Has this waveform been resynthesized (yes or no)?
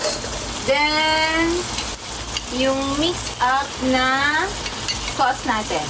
no